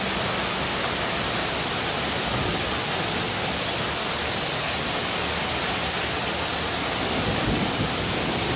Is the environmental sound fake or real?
real